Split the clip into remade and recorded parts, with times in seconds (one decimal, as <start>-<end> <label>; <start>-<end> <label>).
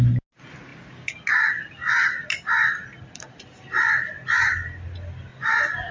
0.0-5.9 recorded